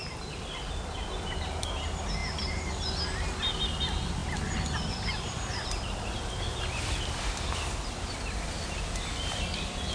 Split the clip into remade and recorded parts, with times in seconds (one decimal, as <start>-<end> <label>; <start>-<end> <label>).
0.0-2.2 recorded; 2.2-2.8 remade; 2.8-4.2 recorded; 4.2-8.1 remade; 8.1-9.9 recorded